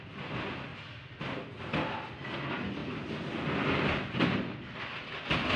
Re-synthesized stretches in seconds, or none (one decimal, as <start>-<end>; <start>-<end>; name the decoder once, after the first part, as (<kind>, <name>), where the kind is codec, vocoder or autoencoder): none